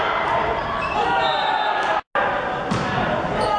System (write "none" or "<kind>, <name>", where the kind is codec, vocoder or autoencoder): none